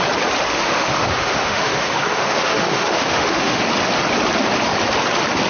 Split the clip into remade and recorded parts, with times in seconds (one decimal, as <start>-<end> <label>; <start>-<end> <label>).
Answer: 0.0-0.5 recorded; 0.5-3.6 remade; 3.6-5.5 recorded